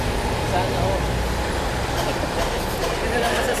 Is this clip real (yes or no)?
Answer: yes